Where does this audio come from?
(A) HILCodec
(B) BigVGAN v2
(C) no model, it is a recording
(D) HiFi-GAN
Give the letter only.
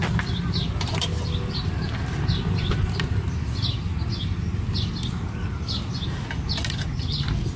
C